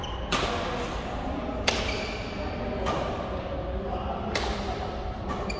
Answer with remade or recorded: recorded